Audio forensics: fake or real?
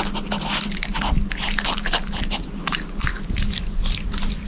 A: real